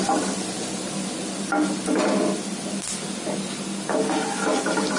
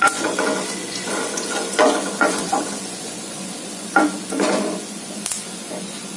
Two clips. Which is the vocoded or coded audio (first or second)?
second